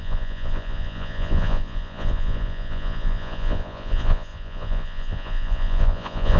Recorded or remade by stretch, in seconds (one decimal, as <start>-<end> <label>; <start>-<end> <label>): 0.0-6.4 remade